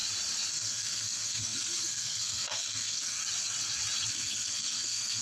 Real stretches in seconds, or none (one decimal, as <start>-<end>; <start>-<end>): 0.0-0.5; 3.2-4.1